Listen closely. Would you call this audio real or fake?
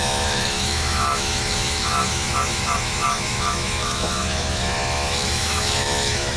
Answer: fake